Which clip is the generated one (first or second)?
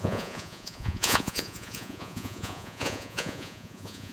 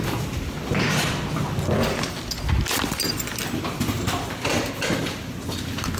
first